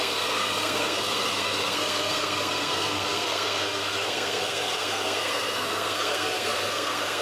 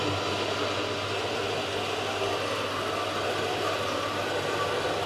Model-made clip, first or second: first